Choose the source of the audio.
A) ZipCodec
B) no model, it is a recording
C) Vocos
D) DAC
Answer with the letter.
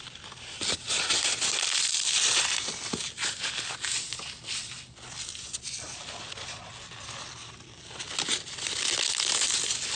B